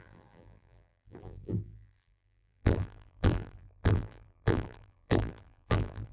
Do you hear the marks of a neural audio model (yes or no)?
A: yes